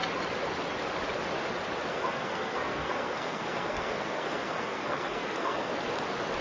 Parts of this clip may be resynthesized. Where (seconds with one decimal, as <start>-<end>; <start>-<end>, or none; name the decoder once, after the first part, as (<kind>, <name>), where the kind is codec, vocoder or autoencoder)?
1.9-5.7 (codec, SNAC)